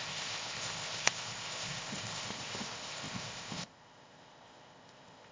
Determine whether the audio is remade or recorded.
remade